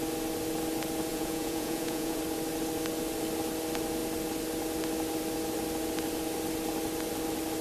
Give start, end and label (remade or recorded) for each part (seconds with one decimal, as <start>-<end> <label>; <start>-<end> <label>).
0.0-1.1 recorded; 1.1-2.2 remade; 2.2-7.6 recorded